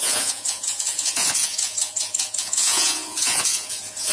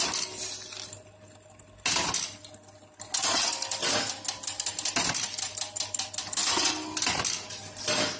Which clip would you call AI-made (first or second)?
first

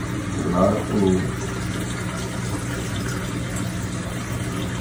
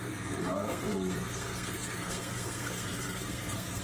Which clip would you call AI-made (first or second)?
second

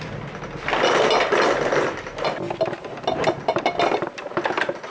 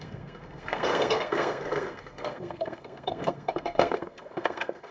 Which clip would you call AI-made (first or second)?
second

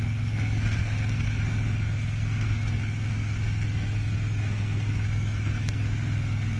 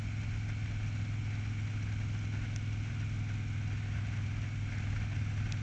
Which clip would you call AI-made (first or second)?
first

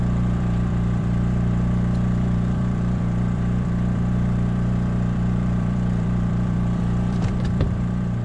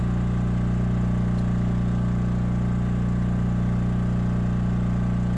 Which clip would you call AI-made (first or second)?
first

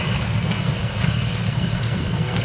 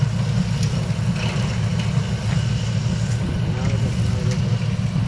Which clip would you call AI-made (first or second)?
first